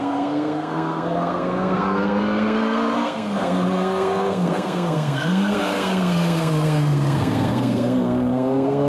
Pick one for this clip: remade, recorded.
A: remade